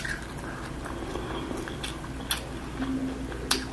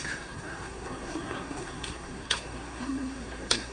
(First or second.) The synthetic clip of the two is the second